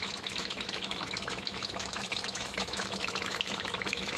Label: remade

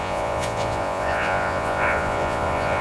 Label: remade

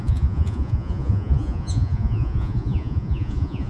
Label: remade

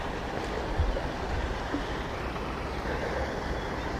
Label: recorded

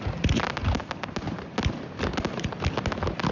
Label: recorded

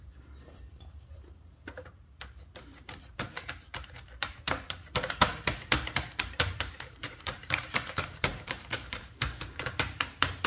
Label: remade